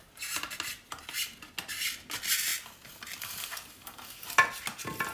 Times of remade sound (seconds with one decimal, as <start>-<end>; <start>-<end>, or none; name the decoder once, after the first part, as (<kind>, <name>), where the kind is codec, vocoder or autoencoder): none